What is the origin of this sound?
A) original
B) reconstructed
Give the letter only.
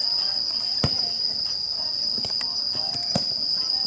A